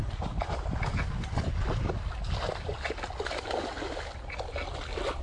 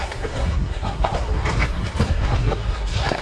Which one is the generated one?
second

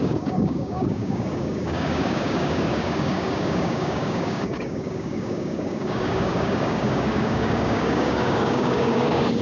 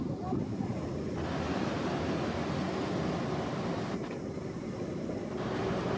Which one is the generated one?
first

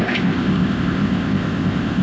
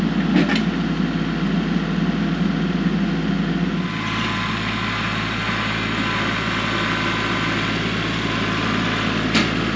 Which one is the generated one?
first